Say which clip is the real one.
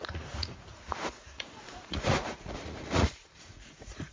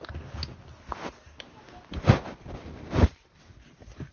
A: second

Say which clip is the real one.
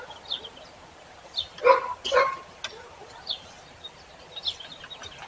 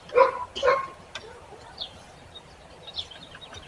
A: first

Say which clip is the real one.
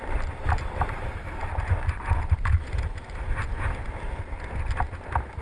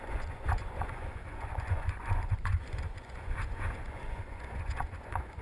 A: first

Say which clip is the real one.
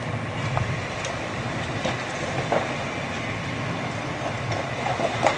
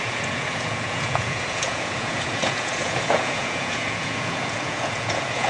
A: first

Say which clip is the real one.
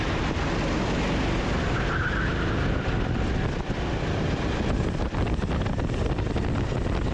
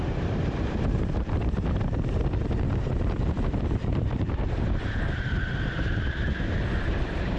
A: first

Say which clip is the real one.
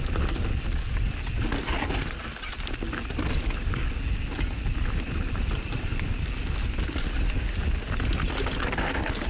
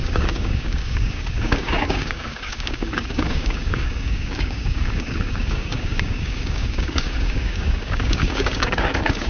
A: first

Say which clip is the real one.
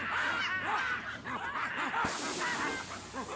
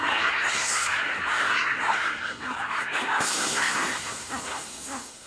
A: first